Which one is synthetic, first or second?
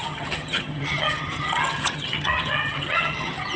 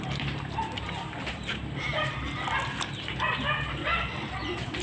first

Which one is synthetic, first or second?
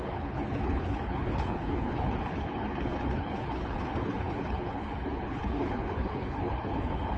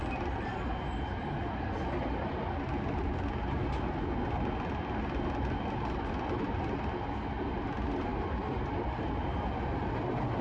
first